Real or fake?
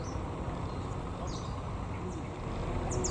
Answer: real